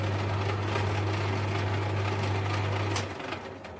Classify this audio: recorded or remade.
recorded